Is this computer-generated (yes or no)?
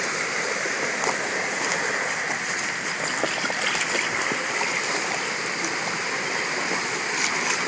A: no